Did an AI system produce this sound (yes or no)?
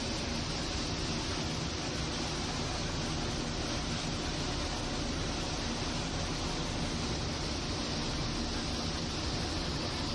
no